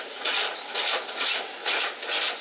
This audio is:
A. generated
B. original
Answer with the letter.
A